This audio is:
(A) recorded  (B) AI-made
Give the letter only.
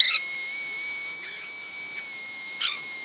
B